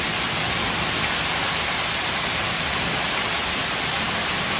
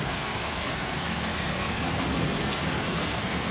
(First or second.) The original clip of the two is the first